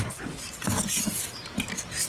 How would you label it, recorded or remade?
recorded